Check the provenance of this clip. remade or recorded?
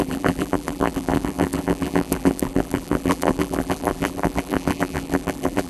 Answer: remade